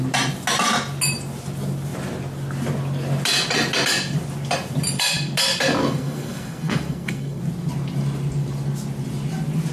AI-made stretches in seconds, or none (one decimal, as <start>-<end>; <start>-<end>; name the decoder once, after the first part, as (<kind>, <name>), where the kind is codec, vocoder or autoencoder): 5.8-7.4 (codec, SNAC)